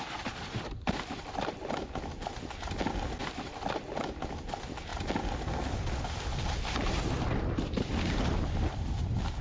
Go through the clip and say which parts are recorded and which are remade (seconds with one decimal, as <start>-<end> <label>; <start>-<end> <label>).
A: 0.0-9.4 recorded